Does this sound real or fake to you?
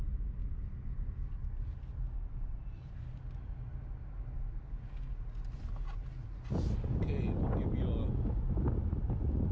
real